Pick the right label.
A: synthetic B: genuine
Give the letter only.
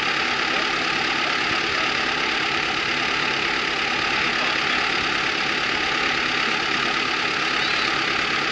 B